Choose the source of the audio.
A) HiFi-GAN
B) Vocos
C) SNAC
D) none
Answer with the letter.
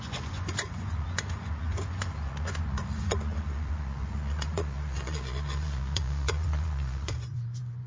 B